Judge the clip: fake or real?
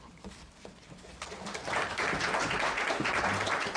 real